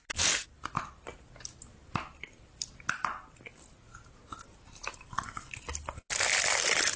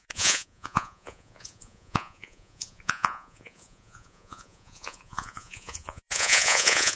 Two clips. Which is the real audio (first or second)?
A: first